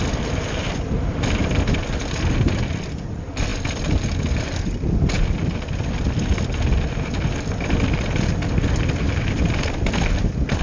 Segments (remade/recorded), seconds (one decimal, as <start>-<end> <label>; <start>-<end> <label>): 0.0-10.6 recorded